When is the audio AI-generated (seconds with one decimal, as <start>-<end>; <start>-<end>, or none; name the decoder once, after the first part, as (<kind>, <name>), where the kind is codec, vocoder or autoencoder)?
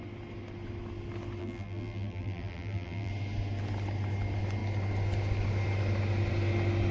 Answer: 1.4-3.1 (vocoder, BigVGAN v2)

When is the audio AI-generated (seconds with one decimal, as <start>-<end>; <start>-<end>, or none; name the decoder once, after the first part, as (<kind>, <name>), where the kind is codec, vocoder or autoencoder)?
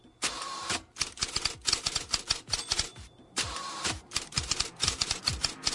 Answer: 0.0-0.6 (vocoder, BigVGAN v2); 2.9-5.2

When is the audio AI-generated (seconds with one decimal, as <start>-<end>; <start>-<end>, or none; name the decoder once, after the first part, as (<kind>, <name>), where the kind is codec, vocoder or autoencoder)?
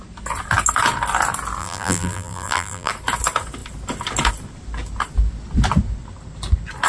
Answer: 1.6-2.9 (vocoder, BigVGAN v2)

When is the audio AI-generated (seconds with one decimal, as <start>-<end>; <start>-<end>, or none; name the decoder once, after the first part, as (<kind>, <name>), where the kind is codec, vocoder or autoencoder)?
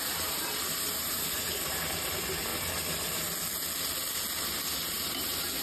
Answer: 0.0-2.5 (vocoder, BigVGAN v2)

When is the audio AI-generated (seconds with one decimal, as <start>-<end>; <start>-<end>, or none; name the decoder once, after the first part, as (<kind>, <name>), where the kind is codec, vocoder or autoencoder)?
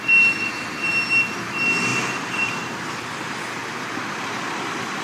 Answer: 1.9-2.9 (vocoder, BigVGAN v2)